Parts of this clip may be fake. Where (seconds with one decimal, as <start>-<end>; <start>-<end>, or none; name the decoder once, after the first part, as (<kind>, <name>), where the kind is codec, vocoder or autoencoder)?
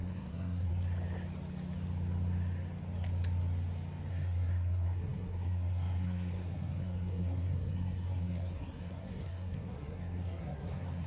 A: 0.0-0.7 (codec, SNAC); 4.1-11.1